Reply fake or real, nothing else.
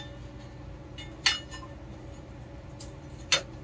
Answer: real